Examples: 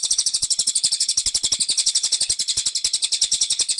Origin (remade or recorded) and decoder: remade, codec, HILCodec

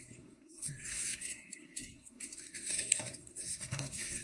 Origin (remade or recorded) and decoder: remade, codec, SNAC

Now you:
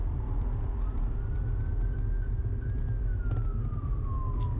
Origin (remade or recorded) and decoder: recorded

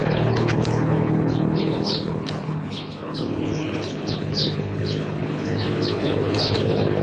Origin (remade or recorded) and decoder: remade, codec, HILCodec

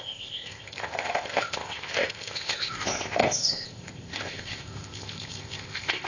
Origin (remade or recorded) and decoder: remade, codec, ZipCodec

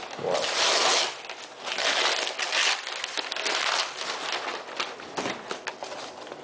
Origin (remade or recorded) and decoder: recorded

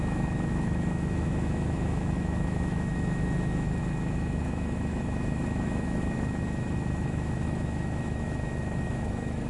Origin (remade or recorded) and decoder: remade, autoencoder, DAC-VAE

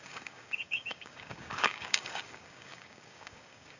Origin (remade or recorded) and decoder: remade, codec, DAC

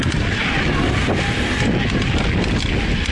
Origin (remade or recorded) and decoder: recorded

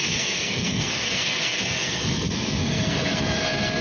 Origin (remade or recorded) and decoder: remade, codec, SNAC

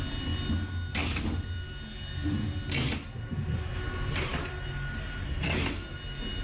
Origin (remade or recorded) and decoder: recorded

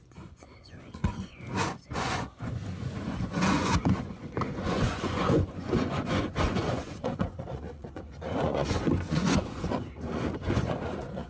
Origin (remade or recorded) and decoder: remade, vocoder, Vocos